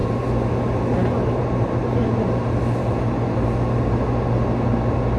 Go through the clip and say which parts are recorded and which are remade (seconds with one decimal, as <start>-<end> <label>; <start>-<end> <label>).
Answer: 0.0-5.2 recorded